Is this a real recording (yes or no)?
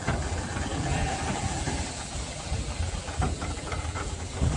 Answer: no